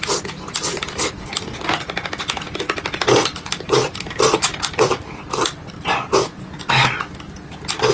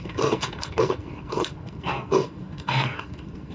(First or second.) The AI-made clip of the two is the second